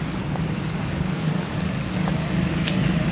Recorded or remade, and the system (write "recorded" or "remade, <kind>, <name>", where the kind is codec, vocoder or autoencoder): remade, codec, DAC